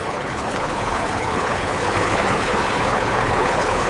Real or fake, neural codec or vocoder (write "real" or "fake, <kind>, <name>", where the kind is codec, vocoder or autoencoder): fake, codec, HILCodec